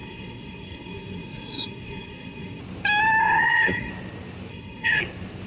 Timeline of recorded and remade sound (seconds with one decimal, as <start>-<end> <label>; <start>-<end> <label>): 0.0-2.6 remade; 2.6-3.2 recorded; 3.2-3.9 remade; 3.9-4.5 recorded; 4.5-5.0 remade; 5.0-5.5 recorded